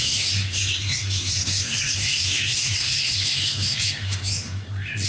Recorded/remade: remade